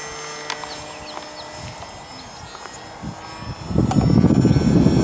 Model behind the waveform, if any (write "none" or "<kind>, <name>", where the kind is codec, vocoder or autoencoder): none